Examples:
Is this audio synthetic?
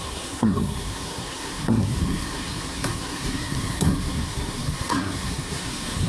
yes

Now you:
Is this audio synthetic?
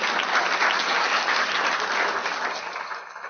no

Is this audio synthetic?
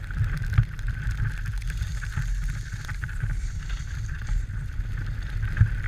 no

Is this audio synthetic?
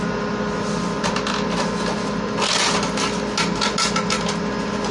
no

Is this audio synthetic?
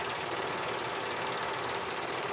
no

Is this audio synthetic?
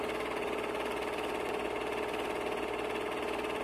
no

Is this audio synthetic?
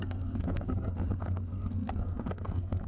yes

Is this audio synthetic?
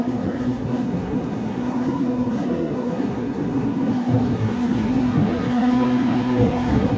yes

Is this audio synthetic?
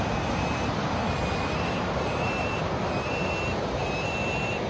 no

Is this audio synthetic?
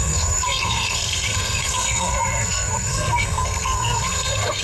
yes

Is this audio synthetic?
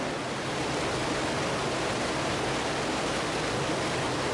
no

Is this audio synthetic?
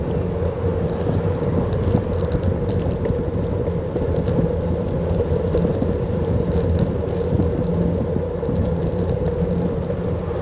no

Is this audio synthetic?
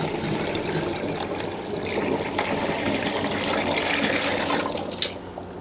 no